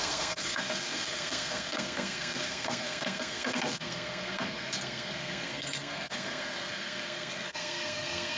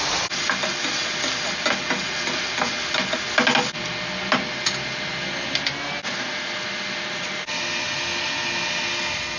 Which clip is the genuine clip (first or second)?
second